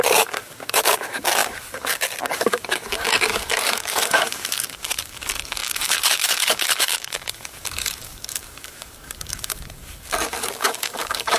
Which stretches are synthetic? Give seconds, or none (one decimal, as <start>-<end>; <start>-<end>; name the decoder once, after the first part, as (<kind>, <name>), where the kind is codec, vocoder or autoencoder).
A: 0.0-11.4 (codec, DAC)

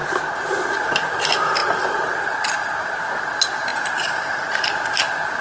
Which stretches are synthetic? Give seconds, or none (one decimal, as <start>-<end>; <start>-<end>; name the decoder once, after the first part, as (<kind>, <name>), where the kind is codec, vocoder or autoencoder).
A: none

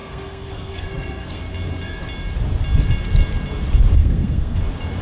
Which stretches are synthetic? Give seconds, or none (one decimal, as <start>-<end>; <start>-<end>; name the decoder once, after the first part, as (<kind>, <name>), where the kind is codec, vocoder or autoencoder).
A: 0.0-1.4 (codec, SNAC); 4.0-4.6

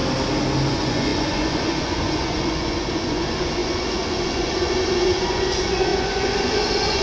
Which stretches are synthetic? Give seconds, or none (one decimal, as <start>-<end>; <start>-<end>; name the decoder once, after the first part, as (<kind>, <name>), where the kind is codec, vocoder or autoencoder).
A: 0.7-7.0 (vocoder, Vocos)